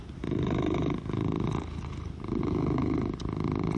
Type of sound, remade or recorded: recorded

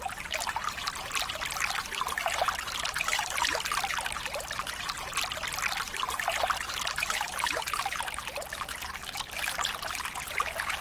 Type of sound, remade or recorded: recorded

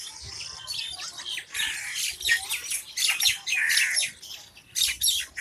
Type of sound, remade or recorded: recorded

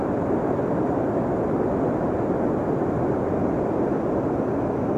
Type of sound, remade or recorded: recorded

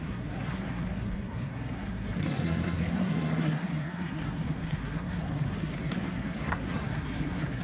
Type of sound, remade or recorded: remade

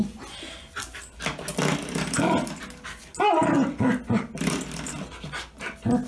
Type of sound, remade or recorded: recorded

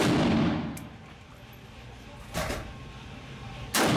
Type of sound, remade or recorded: recorded